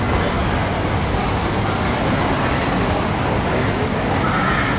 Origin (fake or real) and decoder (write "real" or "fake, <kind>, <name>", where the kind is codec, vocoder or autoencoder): real